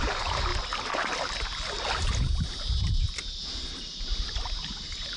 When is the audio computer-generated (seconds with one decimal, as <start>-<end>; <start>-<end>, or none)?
0.0-0.5; 3.6-5.2

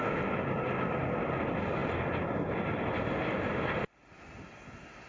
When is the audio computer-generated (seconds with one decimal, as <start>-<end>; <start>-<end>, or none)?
none

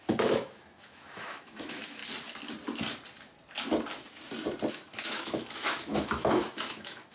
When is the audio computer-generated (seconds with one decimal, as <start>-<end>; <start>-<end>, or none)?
0.0-2.0; 4.7-7.1

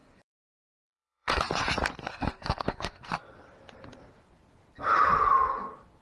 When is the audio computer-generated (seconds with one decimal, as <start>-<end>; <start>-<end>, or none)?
0.0-1.4; 2.0-3.1

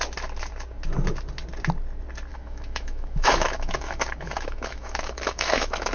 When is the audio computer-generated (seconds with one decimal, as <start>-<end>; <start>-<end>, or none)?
2.3-5.9